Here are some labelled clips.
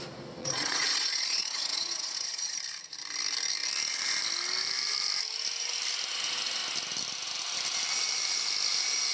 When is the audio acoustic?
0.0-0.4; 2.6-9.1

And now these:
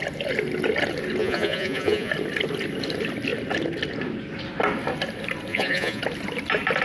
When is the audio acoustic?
0.0-1.2; 2.1-5.5; 6.0-6.8

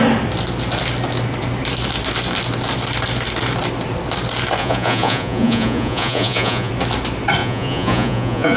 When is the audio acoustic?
0.0-4.6; 6.7-7.4

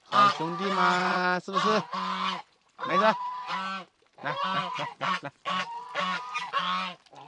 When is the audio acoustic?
0.0-1.0; 2.9-4.2; 5.4-7.3

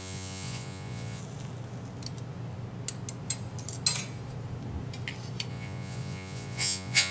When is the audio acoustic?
1.2-5.5